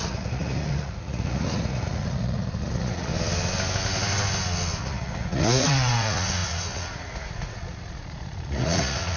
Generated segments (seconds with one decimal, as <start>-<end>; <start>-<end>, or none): 0.0-3.1; 4.8-9.2